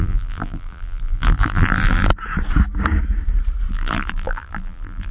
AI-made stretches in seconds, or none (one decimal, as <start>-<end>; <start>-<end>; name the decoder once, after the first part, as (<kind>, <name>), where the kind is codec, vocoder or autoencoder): 0.0-2.1 (vocoder, BigVGAN v2); 3.7-5.1

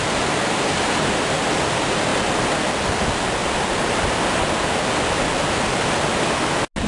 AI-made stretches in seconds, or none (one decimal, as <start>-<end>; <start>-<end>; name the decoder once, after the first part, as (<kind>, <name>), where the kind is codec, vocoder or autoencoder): none

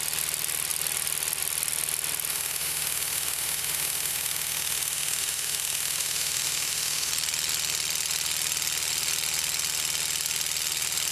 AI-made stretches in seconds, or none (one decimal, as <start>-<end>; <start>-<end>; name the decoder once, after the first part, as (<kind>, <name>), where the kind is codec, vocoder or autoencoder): 2.3-7.1 (autoencoder, DAC-VAE)

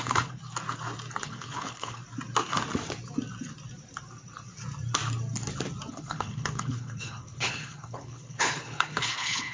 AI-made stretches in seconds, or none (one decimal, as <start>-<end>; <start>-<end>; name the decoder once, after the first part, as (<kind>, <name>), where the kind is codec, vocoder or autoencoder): 0.0-0.4 (codec, HILCodec); 1.2-2.0; 5.9-9.5

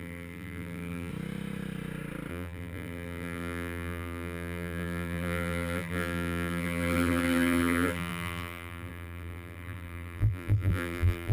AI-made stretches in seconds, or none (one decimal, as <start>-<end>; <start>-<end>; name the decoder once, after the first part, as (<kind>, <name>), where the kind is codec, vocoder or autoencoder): 0.0-1.1 (vocoder, BigVGAN v2); 2.3-11.3